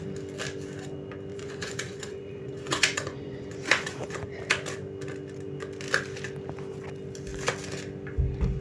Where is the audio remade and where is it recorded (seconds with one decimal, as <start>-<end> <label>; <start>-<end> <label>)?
0.0-1.3 recorded; 1.3-4.4 remade; 4.4-8.6 recorded